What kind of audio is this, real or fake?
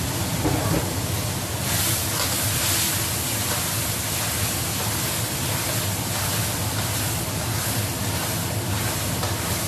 real